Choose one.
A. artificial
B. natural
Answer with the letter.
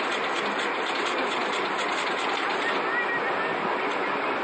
B